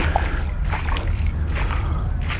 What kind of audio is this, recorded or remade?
recorded